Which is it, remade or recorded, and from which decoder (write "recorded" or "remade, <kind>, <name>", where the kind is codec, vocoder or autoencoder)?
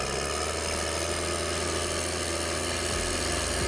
recorded